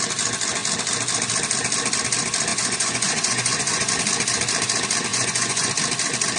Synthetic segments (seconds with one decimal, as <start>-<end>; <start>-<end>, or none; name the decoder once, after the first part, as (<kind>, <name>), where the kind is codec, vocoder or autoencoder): 2.5-3.9 (vocoder, Vocos); 5.1-5.7